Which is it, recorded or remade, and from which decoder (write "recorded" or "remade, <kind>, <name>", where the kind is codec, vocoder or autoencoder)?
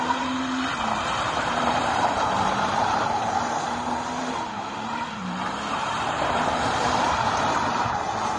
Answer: remade, vocoder, BigVGAN v2